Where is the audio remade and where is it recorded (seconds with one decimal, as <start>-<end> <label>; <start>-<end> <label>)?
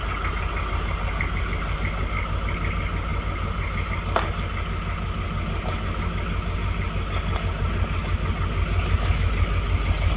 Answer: 0.0-10.2 recorded